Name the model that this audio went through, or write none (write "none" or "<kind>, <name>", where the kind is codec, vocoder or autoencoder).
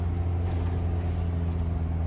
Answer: none